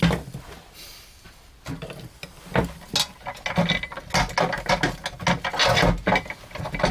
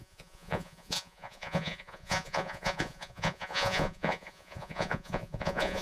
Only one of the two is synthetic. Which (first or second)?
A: second